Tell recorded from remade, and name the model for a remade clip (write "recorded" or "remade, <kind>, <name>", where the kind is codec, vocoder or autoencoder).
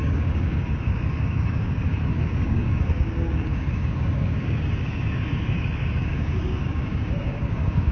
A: remade, codec, DAC